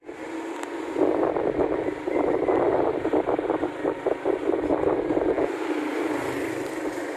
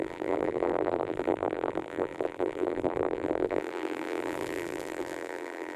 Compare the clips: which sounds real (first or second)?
first